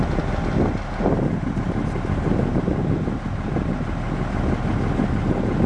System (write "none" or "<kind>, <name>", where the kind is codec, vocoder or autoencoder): none